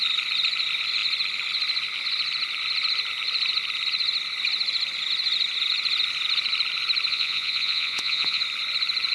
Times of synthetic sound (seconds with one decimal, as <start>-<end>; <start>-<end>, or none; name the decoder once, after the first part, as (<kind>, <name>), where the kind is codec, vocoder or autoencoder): 7.1-8.4 (vocoder, Vocos)